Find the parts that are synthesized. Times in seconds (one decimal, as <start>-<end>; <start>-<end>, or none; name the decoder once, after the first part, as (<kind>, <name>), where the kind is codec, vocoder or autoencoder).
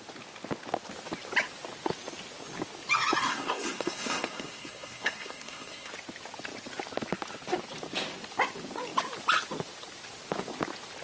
3.2-5.9 (codec, SNAC)